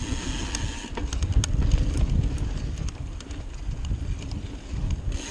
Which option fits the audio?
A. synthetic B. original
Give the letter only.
B